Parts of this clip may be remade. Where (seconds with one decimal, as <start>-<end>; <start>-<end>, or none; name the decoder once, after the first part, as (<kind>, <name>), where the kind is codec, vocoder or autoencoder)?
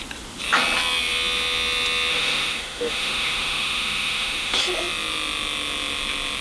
2.1-4.6 (autoencoder, DAC-VAE)